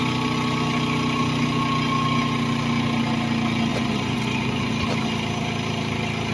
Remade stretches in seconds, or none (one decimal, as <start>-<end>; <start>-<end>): 3.7-4.7